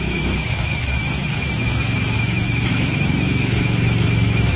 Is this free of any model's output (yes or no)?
no